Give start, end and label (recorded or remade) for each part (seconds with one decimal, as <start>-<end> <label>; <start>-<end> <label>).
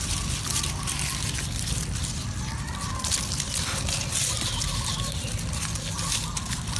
0.0-6.8 recorded